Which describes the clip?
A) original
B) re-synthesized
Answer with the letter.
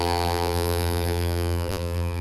B